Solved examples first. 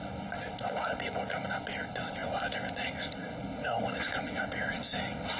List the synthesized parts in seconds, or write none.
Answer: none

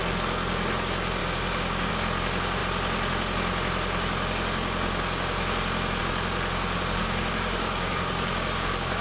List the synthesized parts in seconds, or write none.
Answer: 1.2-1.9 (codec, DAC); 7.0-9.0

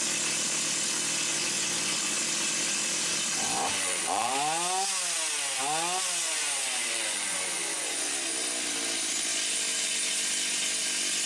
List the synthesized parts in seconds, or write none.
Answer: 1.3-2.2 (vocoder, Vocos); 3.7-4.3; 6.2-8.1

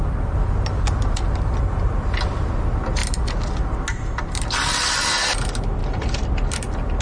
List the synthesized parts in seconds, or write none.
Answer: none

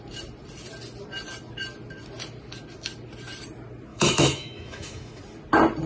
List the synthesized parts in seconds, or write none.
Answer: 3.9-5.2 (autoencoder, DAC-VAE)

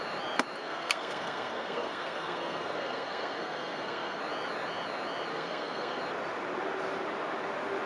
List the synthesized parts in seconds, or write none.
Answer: 0.6-4.2 (codec, SNAC); 5.3-6.0

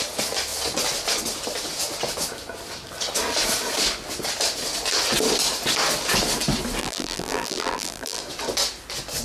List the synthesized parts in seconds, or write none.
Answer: 6.8-8.2 (vocoder, BigVGAN v2)

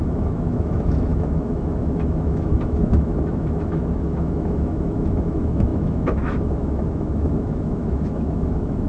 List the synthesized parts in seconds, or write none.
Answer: 0.0-8.9 (autoencoder, DAC-VAE)